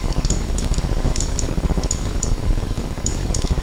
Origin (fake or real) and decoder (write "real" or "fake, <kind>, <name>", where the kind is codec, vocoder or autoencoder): fake, codec, DAC